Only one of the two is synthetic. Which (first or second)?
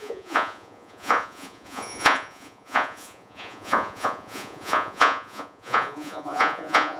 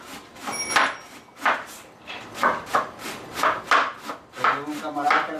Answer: first